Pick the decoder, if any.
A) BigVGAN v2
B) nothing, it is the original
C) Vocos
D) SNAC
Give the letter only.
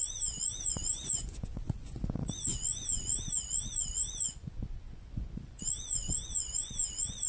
C